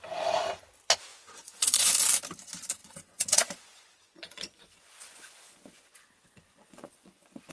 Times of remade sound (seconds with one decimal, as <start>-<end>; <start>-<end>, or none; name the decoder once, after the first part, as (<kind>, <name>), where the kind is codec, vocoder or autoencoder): 1.1-1.9 (vocoder, Vocos); 2.8-7.5